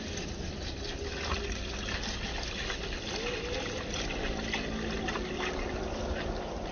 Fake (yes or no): no